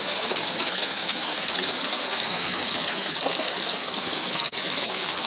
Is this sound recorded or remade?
remade